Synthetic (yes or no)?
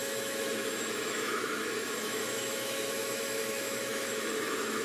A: yes